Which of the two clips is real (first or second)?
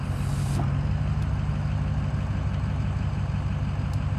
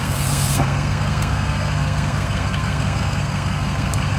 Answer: first